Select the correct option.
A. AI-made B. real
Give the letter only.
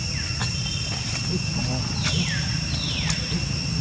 B